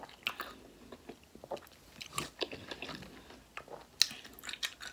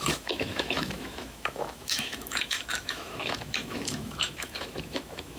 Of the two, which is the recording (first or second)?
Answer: first